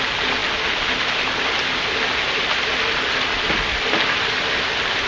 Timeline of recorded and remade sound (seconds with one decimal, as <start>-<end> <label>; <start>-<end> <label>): 0.0-5.1 recorded